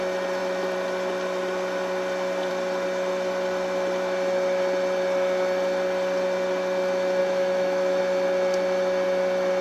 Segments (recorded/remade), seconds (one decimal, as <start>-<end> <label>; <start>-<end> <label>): 0.0-7.2 recorded; 7.2-8.0 remade; 8.0-9.6 recorded